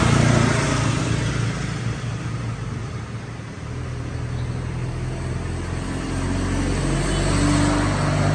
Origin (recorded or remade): recorded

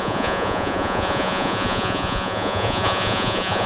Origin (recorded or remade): remade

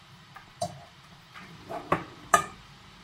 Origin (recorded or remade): remade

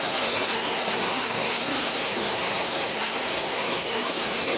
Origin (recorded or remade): remade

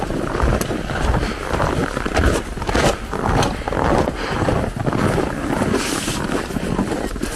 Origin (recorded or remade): recorded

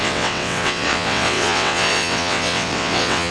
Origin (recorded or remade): remade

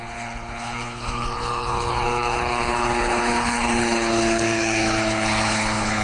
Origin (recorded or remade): remade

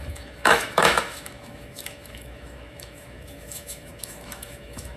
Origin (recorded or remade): remade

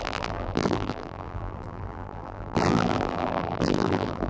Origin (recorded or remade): remade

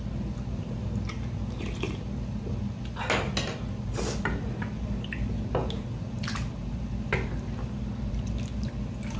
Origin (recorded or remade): recorded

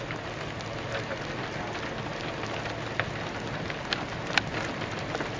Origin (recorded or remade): recorded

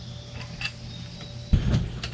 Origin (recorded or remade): recorded